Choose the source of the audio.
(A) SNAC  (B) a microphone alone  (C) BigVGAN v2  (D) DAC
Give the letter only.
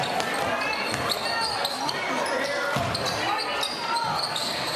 B